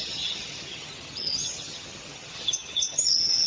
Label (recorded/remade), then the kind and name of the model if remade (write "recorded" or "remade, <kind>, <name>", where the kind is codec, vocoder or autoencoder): remade, vocoder, HiFi-GAN